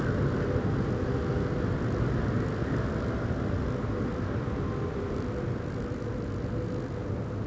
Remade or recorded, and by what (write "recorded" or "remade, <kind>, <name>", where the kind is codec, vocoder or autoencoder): recorded